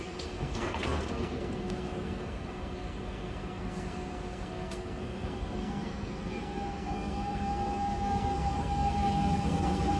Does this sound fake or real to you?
fake